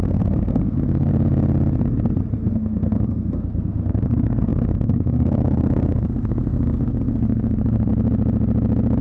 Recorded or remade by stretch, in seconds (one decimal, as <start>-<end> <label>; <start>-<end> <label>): 0.0-1.1 remade; 1.1-2.5 recorded; 2.5-7.9 remade; 7.9-9.0 recorded